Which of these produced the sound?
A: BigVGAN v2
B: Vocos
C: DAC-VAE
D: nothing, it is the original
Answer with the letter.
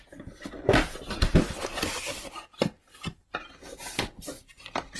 D